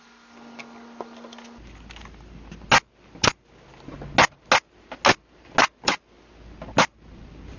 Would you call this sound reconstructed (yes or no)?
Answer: no